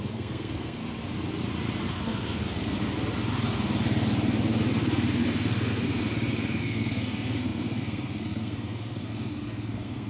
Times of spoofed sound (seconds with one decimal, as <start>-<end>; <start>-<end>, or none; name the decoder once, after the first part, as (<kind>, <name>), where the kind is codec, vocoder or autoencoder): 0.0-0.8 (codec, SNAC); 1.9-2.4; 5.3-5.9; 6.6-10.1